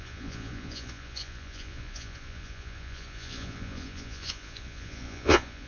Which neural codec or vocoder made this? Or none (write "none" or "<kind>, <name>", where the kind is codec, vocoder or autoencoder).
vocoder, Vocos